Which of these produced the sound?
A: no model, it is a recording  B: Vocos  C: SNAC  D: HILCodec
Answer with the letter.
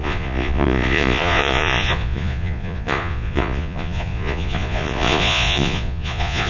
B